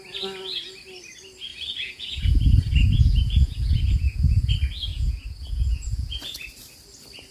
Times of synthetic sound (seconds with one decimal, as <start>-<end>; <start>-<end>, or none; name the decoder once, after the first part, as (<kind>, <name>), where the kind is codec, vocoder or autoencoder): 1.5-4.5 (vocoder, Vocos); 4.9-6.5